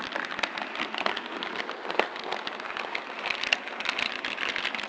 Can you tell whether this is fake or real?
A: real